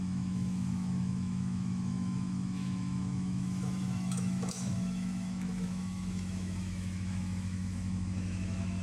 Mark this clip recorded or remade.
remade